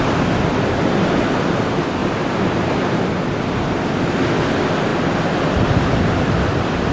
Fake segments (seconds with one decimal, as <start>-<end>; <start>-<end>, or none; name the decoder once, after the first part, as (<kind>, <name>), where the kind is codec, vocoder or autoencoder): 2.0-3.9 (vocoder, BigVGAN v2)